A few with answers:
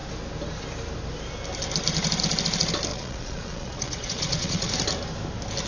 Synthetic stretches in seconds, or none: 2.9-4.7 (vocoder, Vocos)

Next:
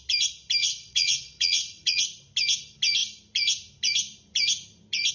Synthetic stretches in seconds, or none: 0.6-2.0 (vocoder, WaveNeXt)

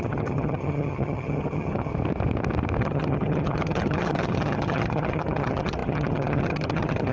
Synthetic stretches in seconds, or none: 0.0-1.9 (vocoder, HiFi-GAN); 2.8-7.1

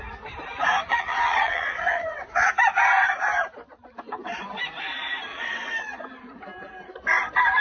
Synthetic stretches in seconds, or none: 0.9-2.5 (vocoder, WaveNeXt); 5.3-5.9

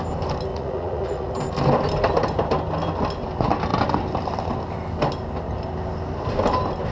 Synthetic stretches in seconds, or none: 0.5-1.3 (vocoder, Vocos)

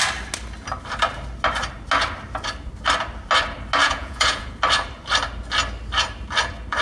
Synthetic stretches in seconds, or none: 3.8-4.5 (vocoder, Vocos)

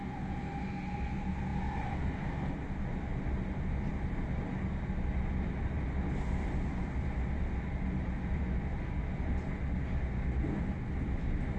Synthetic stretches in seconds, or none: none

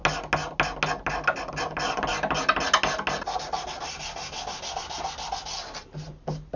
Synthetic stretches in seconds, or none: none